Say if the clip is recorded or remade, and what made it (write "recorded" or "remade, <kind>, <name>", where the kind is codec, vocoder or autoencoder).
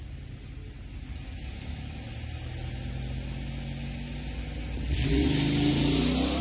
recorded